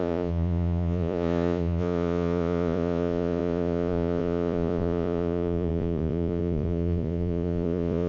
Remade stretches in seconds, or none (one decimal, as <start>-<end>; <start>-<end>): 0.0-8.1